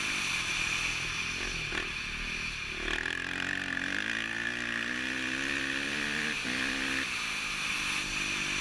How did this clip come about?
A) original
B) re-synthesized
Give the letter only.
A